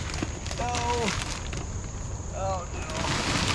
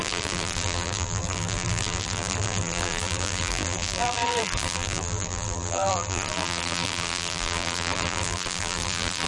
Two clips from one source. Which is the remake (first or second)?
second